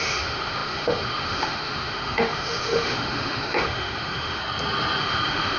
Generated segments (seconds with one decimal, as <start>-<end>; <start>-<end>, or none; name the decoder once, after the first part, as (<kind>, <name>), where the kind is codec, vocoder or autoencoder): 0.0-4.4 (autoencoder, DAC-VAE); 5.0-5.6